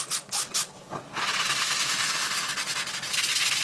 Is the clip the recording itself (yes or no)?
yes